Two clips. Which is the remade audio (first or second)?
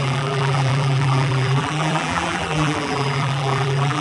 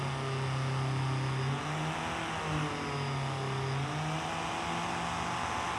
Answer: first